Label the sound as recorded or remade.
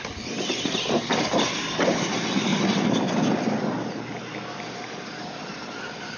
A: recorded